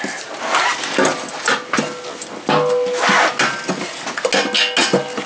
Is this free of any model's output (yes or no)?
yes